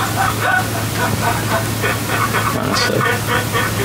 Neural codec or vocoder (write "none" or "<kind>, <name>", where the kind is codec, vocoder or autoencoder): none